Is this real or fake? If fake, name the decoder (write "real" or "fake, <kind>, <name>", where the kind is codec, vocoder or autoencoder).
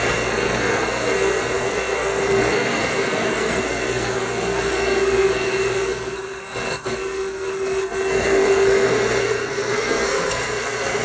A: fake, codec, SNAC